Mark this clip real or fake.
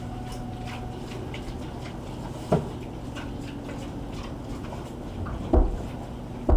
real